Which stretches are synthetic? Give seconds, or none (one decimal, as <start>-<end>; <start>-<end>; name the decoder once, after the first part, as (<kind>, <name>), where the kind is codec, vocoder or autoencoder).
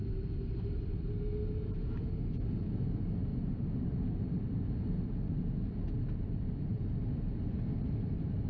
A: 3.3-6.7 (vocoder, BigVGAN v2)